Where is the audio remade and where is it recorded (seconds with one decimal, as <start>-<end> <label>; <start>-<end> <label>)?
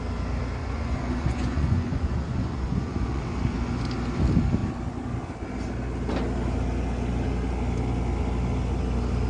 0.0-0.6 recorded; 0.6-3.2 remade; 3.2-9.3 recorded